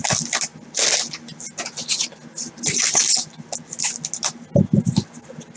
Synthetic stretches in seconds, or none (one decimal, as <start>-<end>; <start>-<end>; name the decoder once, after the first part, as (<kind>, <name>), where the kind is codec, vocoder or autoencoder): none